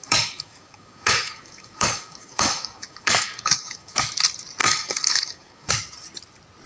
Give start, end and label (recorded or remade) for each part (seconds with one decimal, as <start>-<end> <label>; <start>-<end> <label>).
0.0-4.0 remade; 4.0-4.6 recorded; 4.6-5.7 remade; 5.7-6.7 recorded